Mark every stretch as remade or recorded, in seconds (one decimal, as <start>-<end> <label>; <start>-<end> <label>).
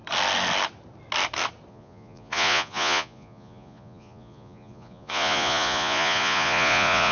0.0-1.7 recorded; 1.7-7.1 remade